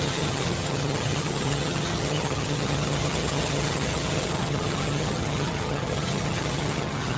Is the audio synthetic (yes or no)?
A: yes